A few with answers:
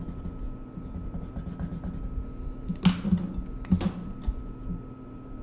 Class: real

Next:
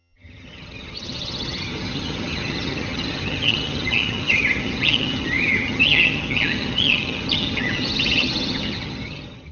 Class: fake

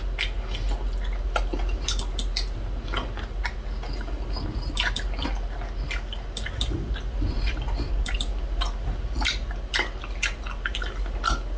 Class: real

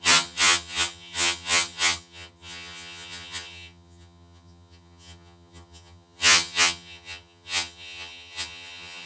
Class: fake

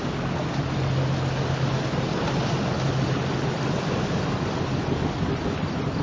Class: real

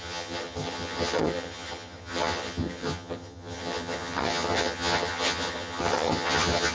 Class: fake